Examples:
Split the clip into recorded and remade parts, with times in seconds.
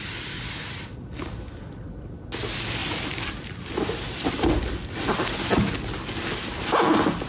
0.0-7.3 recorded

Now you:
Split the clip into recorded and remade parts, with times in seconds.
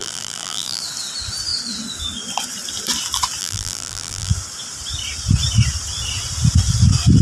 0.0-0.8 remade; 0.8-3.4 recorded; 3.4-4.3 remade; 4.3-7.2 recorded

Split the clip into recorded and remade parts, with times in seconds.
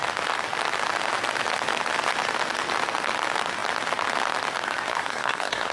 0.0-4.9 recorded; 4.9-5.7 remade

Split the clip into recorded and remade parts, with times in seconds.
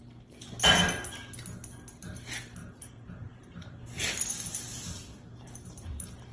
0.0-2.6 recorded; 2.6-4.1 remade; 4.1-5.3 recorded; 5.3-6.3 remade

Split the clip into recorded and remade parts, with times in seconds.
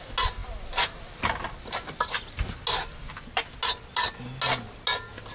0.0-5.3 recorded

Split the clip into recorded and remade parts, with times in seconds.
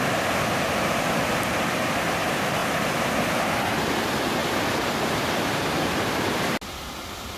0.0-7.4 recorded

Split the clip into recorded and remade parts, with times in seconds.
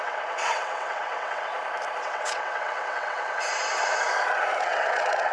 0.0-1.5 remade; 1.5-2.0 recorded; 2.0-3.5 remade; 3.5-4.6 recorded; 4.6-5.3 remade